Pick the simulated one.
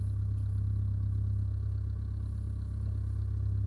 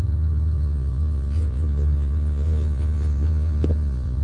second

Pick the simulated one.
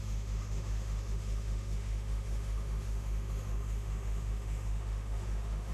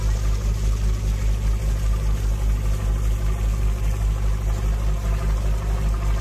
first